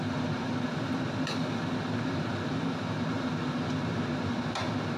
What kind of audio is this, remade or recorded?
remade